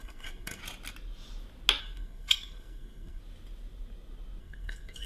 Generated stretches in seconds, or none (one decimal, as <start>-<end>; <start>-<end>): 0.0-0.6; 1.8-3.2; 4.4-5.1